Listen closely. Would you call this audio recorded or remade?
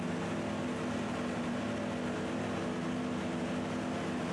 recorded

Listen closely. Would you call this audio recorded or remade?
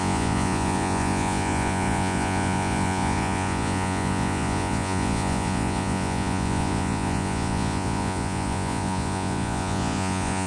remade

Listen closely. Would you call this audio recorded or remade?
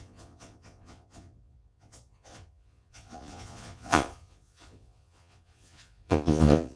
remade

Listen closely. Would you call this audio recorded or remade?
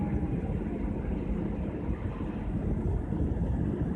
recorded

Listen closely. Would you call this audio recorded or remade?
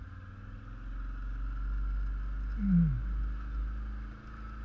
recorded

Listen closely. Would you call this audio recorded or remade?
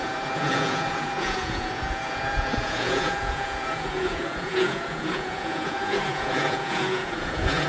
remade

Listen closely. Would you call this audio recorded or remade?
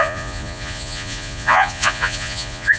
remade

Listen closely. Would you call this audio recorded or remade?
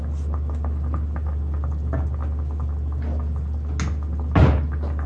recorded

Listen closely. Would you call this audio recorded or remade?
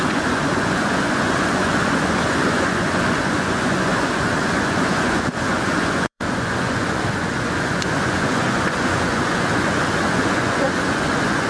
remade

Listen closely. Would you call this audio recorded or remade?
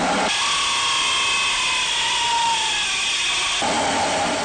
recorded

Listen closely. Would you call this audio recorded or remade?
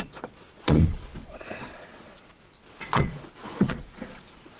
remade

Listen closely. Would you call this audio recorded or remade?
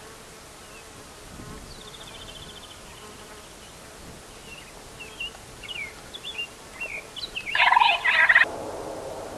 recorded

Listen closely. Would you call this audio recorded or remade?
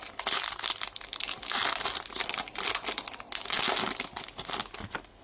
recorded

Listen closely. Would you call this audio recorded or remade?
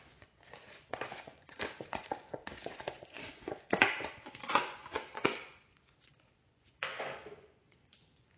remade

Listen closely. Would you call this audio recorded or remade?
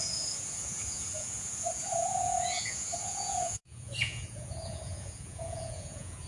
remade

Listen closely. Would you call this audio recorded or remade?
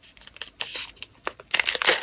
recorded